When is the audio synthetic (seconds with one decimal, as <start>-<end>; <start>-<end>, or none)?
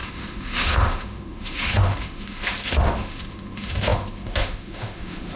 0.0-5.4